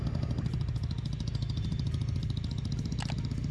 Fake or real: real